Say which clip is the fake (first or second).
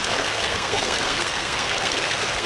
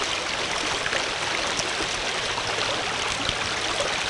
first